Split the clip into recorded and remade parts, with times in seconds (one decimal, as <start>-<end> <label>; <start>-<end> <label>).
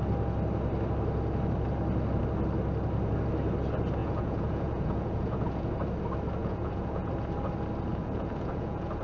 0.0-4.0 recorded; 4.0-5.7 remade; 5.7-6.4 recorded; 6.4-7.1 remade; 7.1-7.9 recorded; 7.9-9.0 remade